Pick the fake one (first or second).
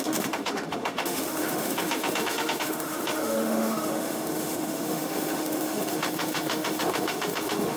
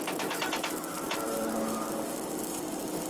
first